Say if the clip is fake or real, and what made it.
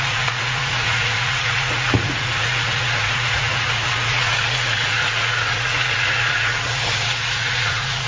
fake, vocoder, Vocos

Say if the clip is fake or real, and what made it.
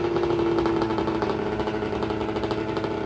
real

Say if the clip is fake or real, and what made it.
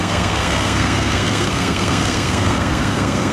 fake, codec, SNAC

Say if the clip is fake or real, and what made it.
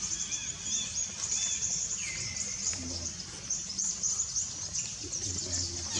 real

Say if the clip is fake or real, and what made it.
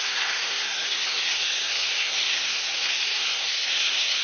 fake, codec, SNAC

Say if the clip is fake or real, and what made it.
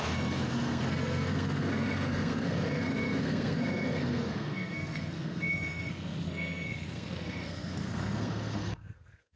fake, codec, SNAC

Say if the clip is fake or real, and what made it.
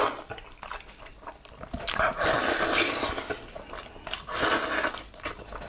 real